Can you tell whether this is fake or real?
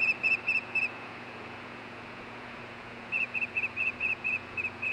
fake